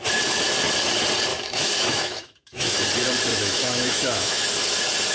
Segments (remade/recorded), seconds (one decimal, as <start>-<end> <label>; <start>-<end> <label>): 0.0-1.3 recorded; 1.3-2.8 remade; 2.8-3.3 recorded; 3.3-4.4 remade; 4.4-5.1 recorded